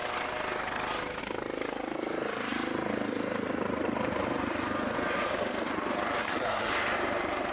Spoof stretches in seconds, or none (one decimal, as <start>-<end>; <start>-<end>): 6.2-6.7